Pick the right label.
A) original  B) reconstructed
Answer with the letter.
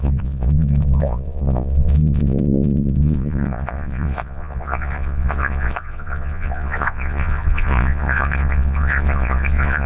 B